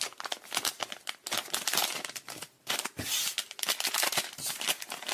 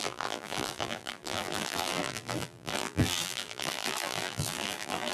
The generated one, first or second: second